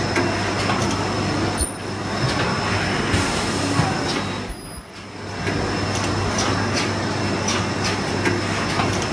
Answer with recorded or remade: recorded